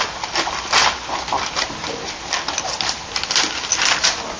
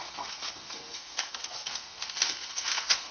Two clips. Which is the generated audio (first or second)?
second